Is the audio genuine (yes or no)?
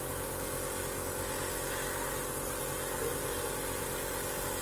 yes